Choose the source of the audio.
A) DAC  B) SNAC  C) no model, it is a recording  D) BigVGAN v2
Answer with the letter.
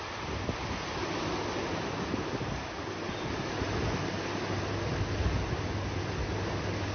C